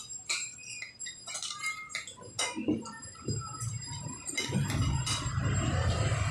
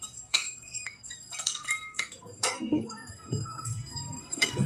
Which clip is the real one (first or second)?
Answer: first